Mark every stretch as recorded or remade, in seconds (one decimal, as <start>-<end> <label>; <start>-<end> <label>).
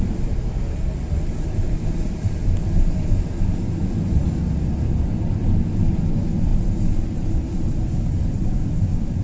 0.0-6.5 recorded; 6.5-8.2 remade; 8.2-9.2 recorded